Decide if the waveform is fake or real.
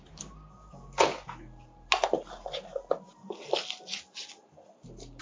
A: real